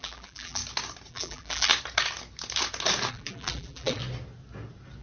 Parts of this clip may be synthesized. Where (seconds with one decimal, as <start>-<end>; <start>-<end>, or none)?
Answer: 0.0-0.6; 1.1-1.7; 3.1-4.0